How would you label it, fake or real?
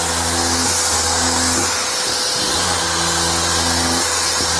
real